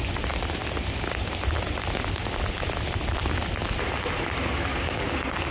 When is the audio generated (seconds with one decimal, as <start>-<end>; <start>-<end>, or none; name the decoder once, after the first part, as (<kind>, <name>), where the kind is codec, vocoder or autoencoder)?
4.7-5.5 (codec, DAC)